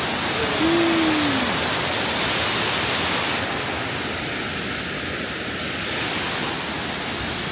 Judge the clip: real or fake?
real